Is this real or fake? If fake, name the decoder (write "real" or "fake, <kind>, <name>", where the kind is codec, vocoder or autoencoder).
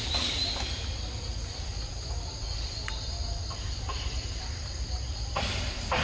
real